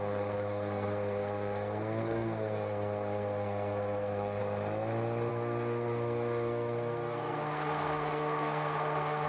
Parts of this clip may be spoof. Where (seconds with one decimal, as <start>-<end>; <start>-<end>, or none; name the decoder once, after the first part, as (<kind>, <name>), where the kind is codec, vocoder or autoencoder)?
0.0-4.4 (codec, SNAC); 5.3-9.3